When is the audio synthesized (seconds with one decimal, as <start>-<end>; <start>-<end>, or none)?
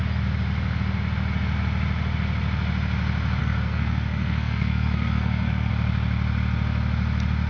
3.4-5.7